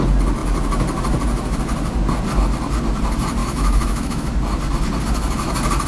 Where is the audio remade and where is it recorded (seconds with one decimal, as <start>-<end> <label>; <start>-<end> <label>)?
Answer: 0.0-3.4 recorded; 3.4-4.3 remade; 4.3-5.9 recorded